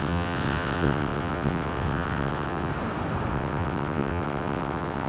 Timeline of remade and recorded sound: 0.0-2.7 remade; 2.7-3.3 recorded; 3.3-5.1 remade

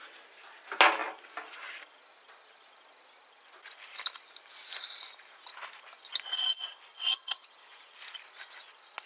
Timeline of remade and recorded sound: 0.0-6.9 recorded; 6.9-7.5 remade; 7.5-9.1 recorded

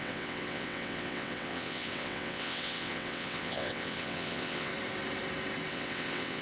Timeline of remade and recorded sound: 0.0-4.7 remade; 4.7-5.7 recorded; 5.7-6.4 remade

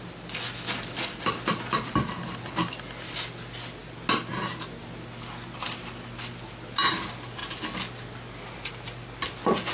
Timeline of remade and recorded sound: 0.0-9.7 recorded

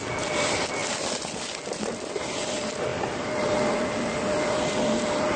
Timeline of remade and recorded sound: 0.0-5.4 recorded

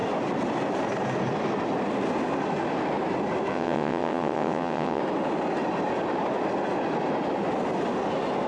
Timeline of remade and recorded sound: 0.0-3.5 recorded; 3.5-5.0 remade; 5.0-8.5 recorded